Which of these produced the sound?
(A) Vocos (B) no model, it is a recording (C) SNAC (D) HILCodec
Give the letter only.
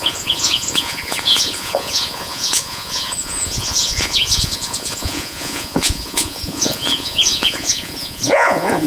A